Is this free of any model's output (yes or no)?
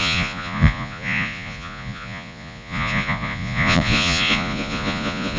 no